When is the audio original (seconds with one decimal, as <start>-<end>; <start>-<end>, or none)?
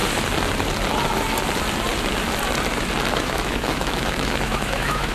0.0-3.1